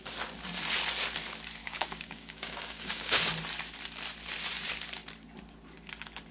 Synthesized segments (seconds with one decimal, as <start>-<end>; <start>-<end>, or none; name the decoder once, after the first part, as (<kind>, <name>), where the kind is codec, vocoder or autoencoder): 1.6-3.2 (codec, DAC)